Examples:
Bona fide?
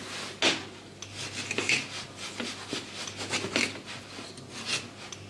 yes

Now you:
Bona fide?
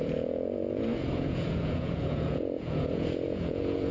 no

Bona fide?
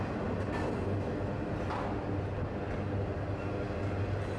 yes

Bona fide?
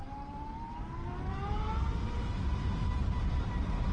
no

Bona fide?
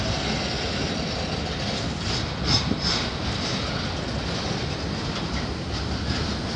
yes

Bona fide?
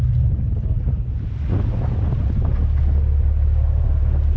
yes